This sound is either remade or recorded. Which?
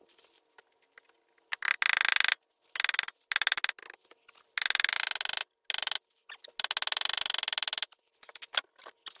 recorded